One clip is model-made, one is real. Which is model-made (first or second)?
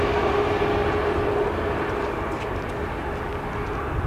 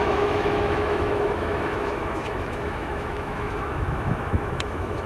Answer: second